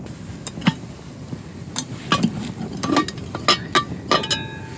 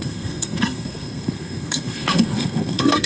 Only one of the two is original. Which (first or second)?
first